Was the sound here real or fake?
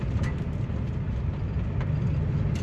real